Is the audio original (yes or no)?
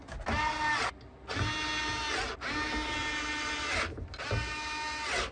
yes